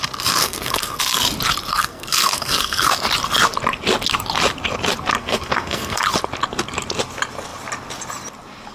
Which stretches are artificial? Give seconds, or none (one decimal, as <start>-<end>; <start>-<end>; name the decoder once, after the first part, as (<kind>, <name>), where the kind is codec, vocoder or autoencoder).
0.4-1.0 (codec, SNAC); 1.7-2.9; 5.2-6.0